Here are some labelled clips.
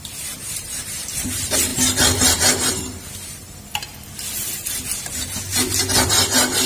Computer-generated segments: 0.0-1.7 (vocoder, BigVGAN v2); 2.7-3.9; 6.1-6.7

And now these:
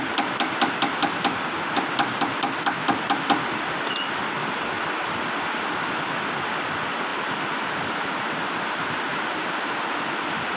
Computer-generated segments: 7.1-10.0 (vocoder, BigVGAN v2)